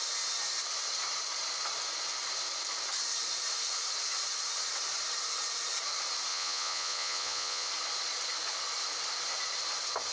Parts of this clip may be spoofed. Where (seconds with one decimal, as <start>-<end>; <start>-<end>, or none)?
6.3-7.7